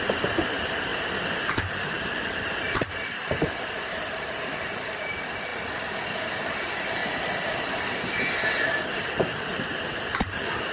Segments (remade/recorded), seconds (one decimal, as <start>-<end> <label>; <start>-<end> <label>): 0.0-5.5 recorded; 5.5-6.6 remade; 6.6-7.0 recorded; 7.0-9.5 remade; 9.5-10.7 recorded

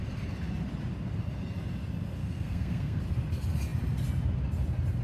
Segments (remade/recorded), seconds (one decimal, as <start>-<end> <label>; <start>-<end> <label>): 0.0-2.2 recorded; 2.2-3.0 remade; 3.0-5.0 recorded

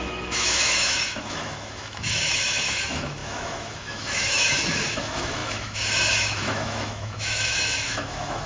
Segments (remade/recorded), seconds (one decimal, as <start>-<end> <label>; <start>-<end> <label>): 0.0-8.5 remade

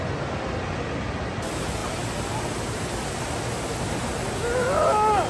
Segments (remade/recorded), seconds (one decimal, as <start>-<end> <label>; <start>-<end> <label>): 0.0-5.3 recorded

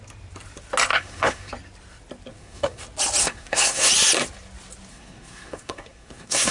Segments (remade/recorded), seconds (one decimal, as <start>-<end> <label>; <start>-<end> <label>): 0.0-0.9 recorded; 0.9-1.5 remade; 1.5-2.3 recorded; 2.3-2.8 remade; 2.8-3.2 recorded; 3.2-3.9 remade; 3.9-4.9 recorded; 4.9-6.5 remade